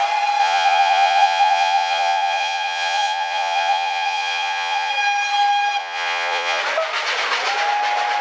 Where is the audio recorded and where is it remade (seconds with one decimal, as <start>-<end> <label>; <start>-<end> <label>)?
0.0-0.4 recorded; 0.4-4.9 remade; 4.9-5.8 recorded; 5.8-6.6 remade; 6.6-8.2 recorded